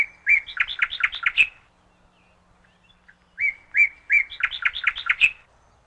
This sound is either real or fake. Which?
real